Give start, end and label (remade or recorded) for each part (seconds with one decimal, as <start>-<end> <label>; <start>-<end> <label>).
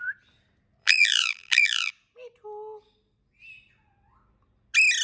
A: 0.0-0.8 recorded; 0.8-1.9 remade; 1.9-5.0 recorded